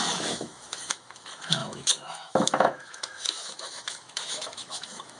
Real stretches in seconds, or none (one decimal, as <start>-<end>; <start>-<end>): none